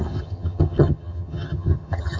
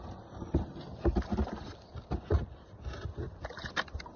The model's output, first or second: first